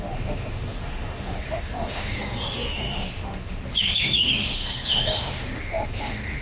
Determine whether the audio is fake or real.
fake